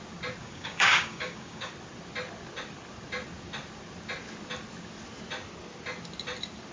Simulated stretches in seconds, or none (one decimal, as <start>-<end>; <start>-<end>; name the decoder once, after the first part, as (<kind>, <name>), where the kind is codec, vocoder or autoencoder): 0.4-1.7 (codec, DAC)

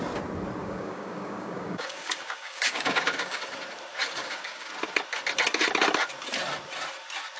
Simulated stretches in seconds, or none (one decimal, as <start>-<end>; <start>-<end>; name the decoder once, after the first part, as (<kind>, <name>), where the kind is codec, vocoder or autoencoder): 0.6-3.4 (codec, DAC); 4.2-4.7

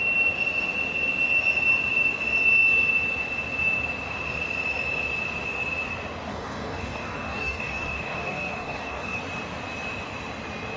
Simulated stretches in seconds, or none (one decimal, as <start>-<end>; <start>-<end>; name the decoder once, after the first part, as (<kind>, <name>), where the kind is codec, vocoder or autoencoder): 6.3-9.2 (codec, DAC)